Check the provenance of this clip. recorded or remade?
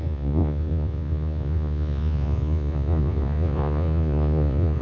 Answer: remade